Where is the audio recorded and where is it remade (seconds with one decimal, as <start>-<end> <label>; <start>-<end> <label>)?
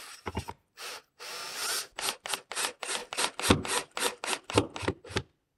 0.0-5.6 recorded